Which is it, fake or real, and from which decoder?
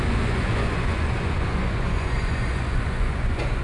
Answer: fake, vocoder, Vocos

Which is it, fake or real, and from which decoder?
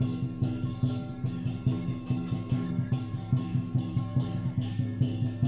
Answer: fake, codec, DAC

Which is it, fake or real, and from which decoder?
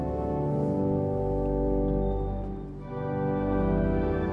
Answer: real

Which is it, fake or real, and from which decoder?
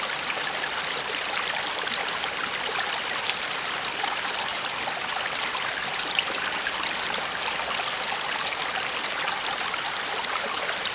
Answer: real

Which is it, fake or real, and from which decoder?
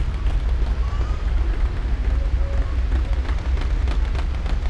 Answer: real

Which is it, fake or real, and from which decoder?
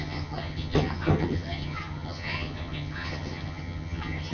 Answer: fake, vocoder, HiFi-GAN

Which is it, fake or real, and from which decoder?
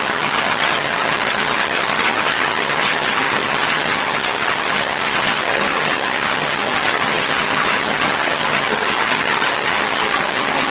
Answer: fake, vocoder, HiFi-GAN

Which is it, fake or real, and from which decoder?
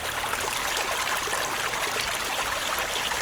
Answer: real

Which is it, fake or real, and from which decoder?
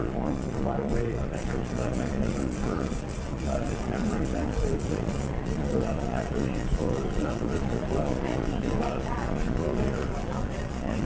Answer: fake, vocoder, Vocos